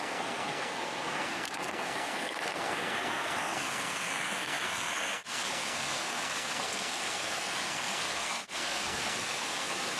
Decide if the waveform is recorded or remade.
remade